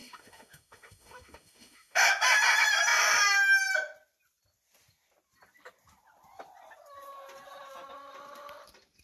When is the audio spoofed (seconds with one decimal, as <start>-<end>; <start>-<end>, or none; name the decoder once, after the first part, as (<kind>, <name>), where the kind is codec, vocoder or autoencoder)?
0.0-2.1 (autoencoder, DAC-VAE)